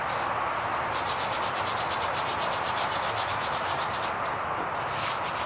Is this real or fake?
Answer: real